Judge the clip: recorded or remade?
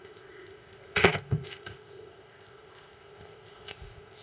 remade